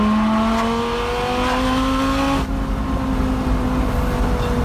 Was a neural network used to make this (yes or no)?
no